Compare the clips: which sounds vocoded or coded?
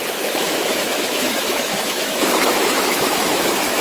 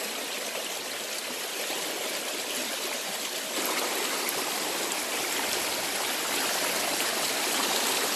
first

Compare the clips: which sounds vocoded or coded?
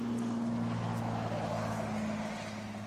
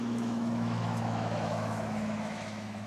second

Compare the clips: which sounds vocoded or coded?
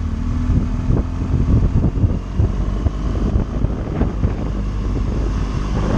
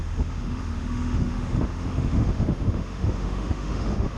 second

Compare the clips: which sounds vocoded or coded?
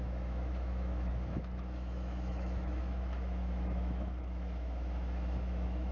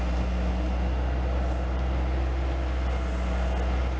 first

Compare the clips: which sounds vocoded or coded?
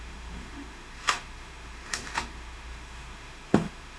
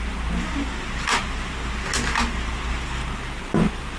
first